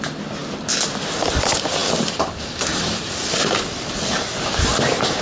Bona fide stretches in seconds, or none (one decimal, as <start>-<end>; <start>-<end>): 0.0-1.8; 4.1-5.2